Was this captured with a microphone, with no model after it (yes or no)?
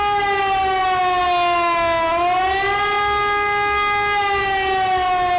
yes